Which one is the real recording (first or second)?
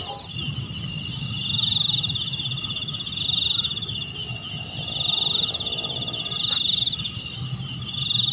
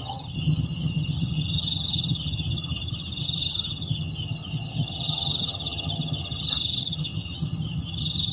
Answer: first